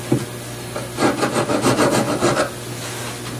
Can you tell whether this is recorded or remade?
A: recorded